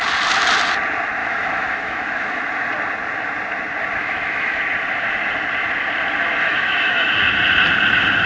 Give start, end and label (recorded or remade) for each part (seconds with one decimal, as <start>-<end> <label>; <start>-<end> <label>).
0.0-1.2 recorded; 1.2-2.4 remade; 2.4-4.0 recorded; 4.0-4.6 remade; 4.6-6.4 recorded; 6.4-7.2 remade; 7.2-8.3 recorded